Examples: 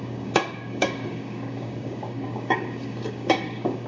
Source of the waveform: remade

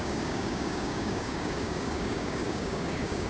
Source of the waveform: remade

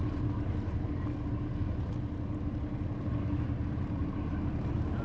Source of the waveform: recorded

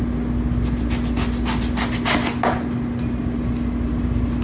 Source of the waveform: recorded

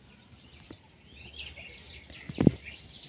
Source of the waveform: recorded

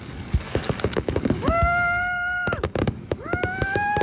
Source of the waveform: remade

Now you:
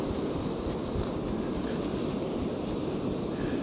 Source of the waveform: recorded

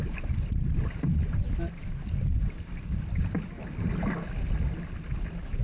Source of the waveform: recorded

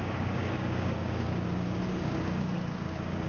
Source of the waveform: remade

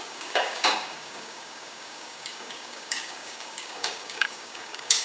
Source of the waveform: remade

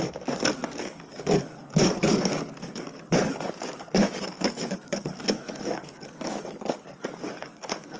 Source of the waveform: remade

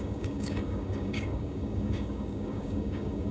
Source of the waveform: remade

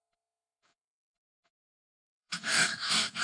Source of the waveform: remade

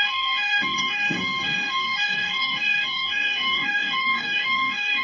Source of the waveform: remade